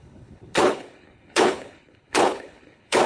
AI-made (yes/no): yes